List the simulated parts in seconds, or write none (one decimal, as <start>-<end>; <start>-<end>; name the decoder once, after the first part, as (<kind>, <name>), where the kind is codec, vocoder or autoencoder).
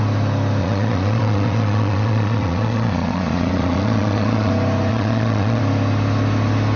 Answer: 0.6-4.5 (vocoder, Vocos); 4.9-5.6